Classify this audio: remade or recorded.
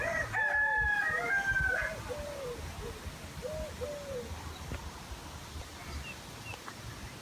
recorded